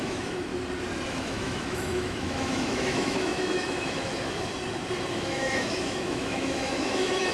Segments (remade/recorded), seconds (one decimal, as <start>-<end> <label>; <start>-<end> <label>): 0.0-0.5 remade; 0.5-1.1 recorded; 1.1-4.5 remade; 4.5-5.1 recorded; 5.1-7.3 remade